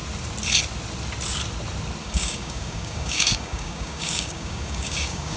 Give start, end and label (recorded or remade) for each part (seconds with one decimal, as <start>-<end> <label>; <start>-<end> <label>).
0.0-2.0 recorded; 2.0-5.4 remade